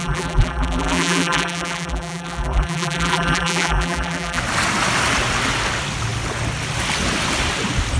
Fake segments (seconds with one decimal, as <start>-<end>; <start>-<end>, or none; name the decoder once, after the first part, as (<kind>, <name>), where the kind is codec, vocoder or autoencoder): 0.0-4.4 (vocoder, BigVGAN v2)